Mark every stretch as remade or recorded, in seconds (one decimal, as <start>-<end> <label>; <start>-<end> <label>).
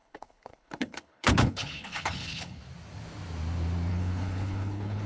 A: 0.0-2.6 remade; 2.6-3.9 recorded; 3.9-5.1 remade